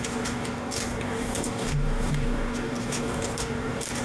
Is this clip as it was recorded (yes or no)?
no